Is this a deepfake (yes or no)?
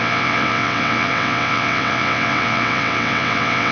yes